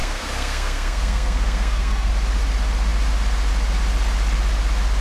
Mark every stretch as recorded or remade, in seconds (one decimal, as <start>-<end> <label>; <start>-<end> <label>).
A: 0.0-2.1 remade; 2.1-5.0 recorded